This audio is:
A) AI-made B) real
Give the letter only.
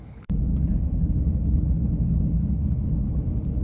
A